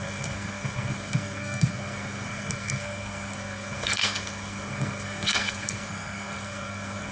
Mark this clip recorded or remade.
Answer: remade